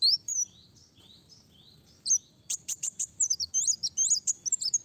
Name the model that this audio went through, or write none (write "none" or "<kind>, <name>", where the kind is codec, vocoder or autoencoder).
none